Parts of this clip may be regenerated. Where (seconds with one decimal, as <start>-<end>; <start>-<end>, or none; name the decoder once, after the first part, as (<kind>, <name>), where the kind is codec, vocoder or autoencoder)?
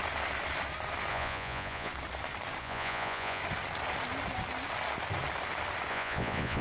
1.1-1.9 (vocoder, Vocos); 2.6-3.4; 5.9-6.6